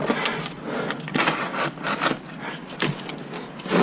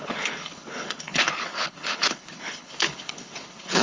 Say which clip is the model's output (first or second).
second